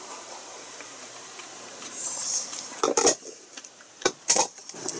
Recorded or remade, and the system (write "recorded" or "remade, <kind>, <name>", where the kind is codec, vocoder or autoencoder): remade, vocoder, BigVGAN v2